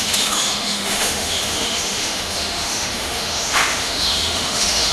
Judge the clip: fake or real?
fake